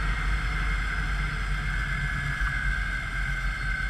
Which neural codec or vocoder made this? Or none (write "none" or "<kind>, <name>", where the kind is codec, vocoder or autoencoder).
none